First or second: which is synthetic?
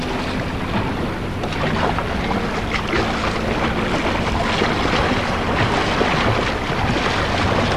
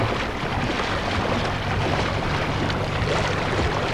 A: second